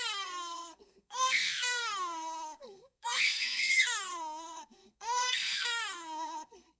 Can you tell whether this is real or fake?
fake